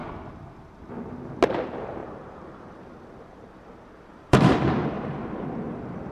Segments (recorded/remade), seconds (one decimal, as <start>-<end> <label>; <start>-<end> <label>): 0.0-2.0 recorded; 2.0-2.8 remade; 2.8-4.1 recorded; 4.1-5.1 remade; 5.1-6.1 recorded